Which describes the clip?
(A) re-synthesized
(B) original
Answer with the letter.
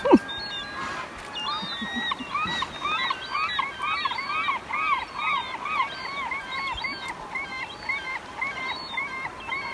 B